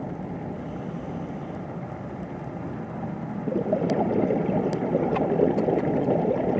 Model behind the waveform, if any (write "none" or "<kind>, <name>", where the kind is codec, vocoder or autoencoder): none